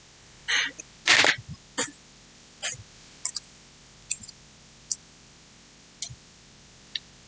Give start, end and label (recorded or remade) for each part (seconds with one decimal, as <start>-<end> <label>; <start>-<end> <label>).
0.0-7.3 recorded